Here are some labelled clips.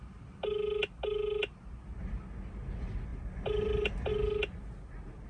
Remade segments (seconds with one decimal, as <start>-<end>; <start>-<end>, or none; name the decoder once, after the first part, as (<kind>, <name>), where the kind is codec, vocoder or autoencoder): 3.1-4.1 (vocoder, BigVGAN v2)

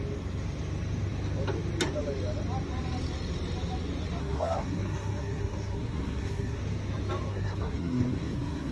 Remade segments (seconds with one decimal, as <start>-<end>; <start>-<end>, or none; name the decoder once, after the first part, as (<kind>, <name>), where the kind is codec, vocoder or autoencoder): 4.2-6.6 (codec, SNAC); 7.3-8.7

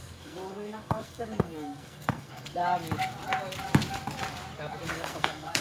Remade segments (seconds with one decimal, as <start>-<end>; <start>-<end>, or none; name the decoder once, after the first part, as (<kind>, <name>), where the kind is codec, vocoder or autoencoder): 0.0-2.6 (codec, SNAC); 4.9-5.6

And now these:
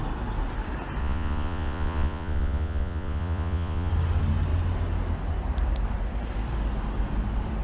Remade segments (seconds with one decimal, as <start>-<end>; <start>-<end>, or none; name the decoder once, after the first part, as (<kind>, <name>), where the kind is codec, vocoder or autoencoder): 1.0-3.9 (vocoder, Vocos)